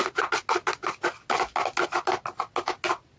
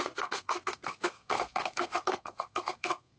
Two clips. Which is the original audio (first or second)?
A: first